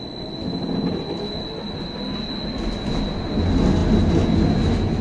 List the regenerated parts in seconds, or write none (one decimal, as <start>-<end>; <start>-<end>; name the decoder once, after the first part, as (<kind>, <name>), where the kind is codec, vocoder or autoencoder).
none